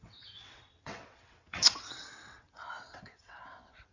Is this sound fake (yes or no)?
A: yes